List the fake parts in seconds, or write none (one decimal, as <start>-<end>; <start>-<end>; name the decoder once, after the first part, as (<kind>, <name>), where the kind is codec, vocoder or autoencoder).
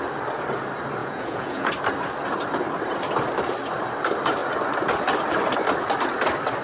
1.0-1.7 (vocoder, Vocos)